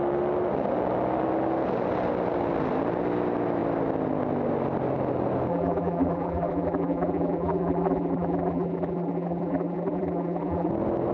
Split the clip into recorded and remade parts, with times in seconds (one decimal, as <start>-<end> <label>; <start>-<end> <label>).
0.0-5.5 recorded; 5.5-10.7 remade; 10.7-11.1 recorded